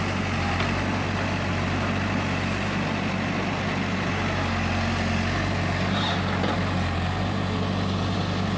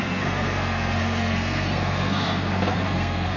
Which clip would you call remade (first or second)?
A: second